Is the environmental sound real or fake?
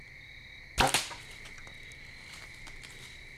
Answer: real